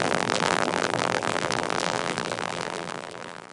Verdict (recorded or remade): remade